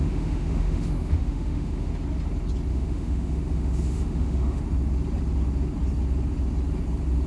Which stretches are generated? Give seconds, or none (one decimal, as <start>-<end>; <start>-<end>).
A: 0.0-1.9; 2.7-4.6